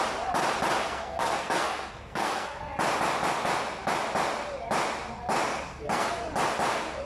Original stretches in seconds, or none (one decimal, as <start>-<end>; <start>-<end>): 0.0-0.8; 2.6-5.5; 6.2-7.1